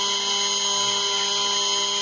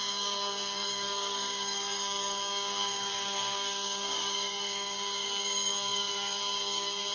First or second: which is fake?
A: second